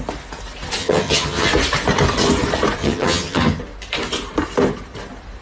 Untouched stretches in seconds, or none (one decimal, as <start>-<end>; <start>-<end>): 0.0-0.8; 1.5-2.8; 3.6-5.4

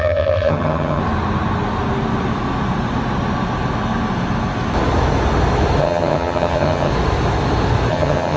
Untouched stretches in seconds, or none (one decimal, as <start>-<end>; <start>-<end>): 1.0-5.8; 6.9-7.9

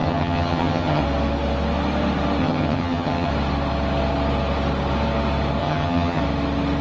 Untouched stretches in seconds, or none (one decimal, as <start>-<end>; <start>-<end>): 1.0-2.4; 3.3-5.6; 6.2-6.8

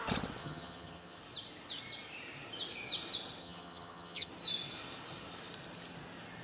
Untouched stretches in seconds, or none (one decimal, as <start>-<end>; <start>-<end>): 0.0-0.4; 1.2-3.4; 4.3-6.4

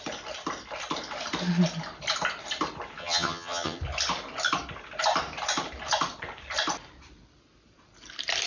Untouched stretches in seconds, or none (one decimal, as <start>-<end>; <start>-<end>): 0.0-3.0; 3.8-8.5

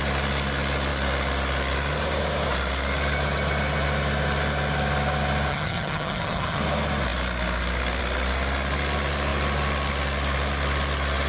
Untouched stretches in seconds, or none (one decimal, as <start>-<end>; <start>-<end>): 0.0-5.5; 6.6-11.3

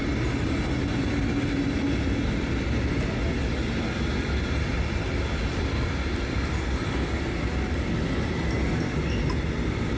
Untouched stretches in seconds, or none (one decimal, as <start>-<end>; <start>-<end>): 0.0-10.0